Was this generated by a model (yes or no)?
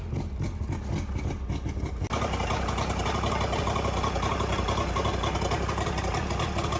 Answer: no